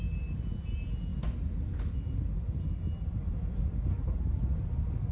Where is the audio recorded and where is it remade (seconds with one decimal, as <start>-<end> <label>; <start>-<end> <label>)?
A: 0.0-5.1 recorded